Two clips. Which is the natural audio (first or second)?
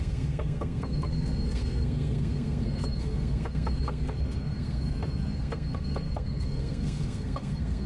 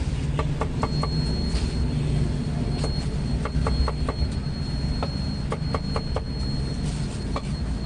second